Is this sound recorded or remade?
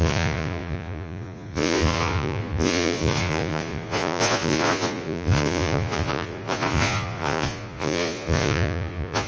remade